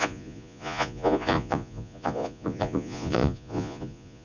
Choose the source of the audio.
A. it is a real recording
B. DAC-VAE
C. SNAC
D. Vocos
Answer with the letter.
D